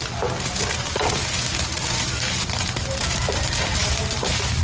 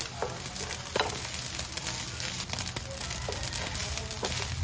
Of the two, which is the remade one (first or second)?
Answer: first